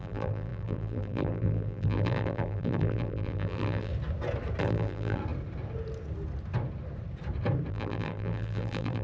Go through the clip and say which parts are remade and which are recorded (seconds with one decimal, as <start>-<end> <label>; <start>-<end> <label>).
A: 0.0-3.9 remade; 3.9-4.6 recorded; 4.6-5.2 remade; 5.2-7.7 recorded; 7.7-9.0 remade